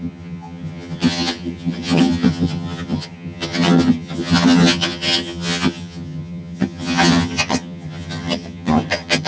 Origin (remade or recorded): remade